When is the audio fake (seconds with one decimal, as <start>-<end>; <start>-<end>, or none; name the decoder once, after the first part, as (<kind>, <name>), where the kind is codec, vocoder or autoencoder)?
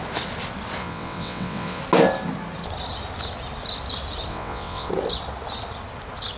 0.8-1.8 (vocoder, WaveNeXt); 4.3-4.9